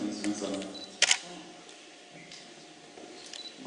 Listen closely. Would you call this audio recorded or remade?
recorded